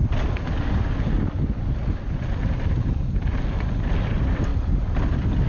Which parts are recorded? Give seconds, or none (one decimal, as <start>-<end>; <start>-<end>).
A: 0.0-4.5